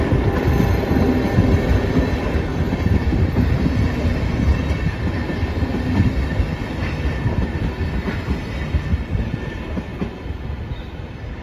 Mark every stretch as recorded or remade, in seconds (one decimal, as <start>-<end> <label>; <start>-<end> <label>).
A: 0.0-2.5 recorded; 2.5-3.5 remade; 3.5-8.9 recorded; 8.9-9.5 remade; 9.5-9.9 recorded; 9.9-10.4 remade; 10.4-11.4 recorded